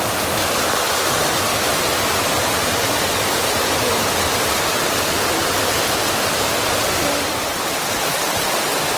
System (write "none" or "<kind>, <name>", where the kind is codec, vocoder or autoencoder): none